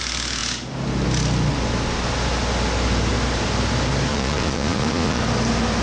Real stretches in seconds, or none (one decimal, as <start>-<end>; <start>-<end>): 0.0-4.1; 5.2-5.8